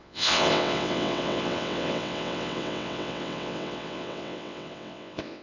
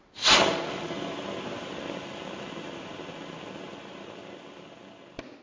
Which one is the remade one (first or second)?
first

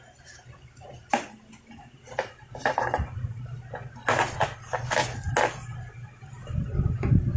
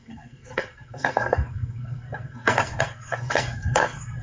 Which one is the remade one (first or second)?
second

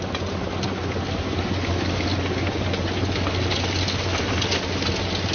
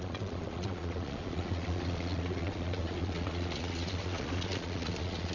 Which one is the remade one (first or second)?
second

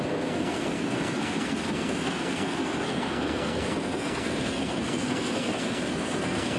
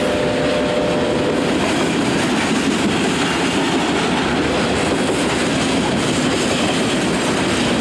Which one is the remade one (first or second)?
first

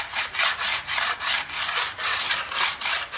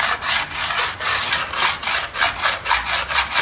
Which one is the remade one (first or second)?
first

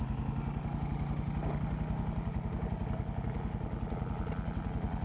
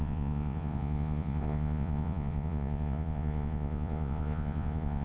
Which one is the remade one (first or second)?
second